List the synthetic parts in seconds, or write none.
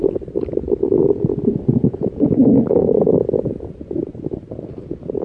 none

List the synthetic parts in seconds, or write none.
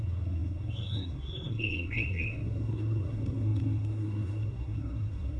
0.0-5.4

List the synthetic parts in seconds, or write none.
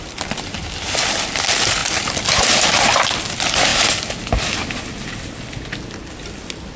none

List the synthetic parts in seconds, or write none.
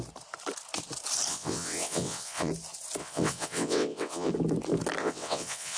1.3-2.5; 3.0-4.3; 5.0-5.8